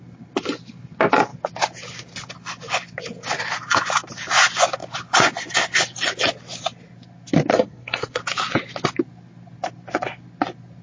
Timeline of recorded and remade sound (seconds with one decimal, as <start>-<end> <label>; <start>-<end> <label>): 0.0-7.5 recorded; 7.5-8.2 remade; 8.2-10.8 recorded

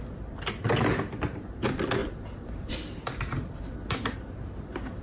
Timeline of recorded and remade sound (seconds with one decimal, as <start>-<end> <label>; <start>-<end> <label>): 0.0-5.0 recorded

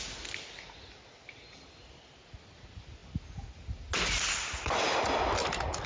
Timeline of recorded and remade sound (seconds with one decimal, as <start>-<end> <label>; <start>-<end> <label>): 0.0-5.9 recorded

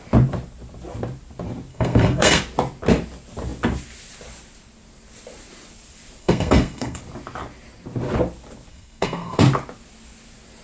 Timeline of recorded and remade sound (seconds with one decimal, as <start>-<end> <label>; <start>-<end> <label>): 0.0-1.7 recorded; 1.7-2.4 remade; 2.4-6.2 recorded; 6.2-7.0 remade; 7.0-8.7 recorded; 8.7-9.4 remade; 9.4-10.6 recorded

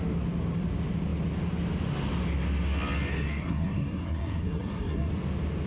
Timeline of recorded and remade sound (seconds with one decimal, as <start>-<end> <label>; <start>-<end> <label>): 0.0-3.1 recorded; 3.1-5.1 remade; 5.1-5.7 recorded

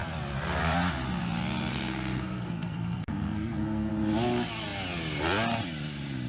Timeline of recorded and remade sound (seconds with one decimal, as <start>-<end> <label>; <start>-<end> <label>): 0.0-1.7 recorded; 1.7-3.9 remade; 3.9-6.3 recorded

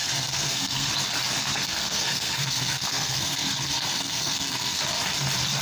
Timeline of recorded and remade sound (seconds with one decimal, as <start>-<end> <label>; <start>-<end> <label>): 0.0-0.9 remade; 0.9-1.4 recorded; 1.4-4.8 remade; 4.8-5.6 recorded

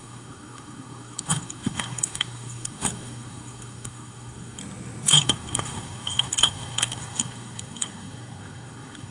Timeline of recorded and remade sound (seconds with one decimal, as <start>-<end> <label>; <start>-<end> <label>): 0.0-4.6 remade; 4.6-5.1 recorded; 5.1-9.1 remade